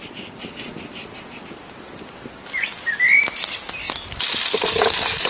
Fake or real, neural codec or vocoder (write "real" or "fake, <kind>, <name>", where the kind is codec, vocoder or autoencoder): real